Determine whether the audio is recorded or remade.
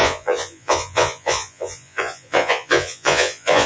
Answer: remade